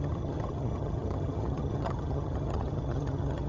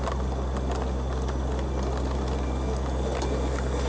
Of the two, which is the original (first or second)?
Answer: second